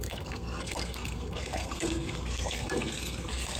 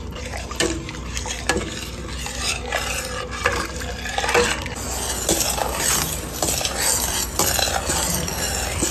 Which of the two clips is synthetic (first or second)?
first